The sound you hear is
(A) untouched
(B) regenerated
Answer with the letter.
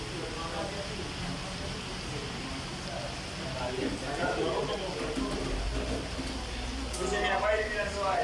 A